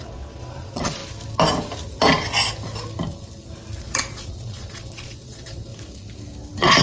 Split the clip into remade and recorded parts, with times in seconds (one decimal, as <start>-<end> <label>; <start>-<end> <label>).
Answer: 0.0-1.0 remade; 1.0-3.8 recorded; 3.8-5.7 remade; 5.7-6.8 recorded